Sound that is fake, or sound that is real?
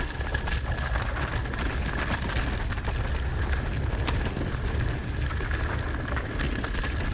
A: real